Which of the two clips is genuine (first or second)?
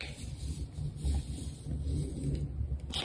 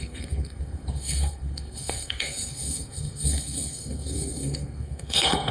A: first